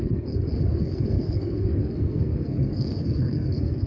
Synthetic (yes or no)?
yes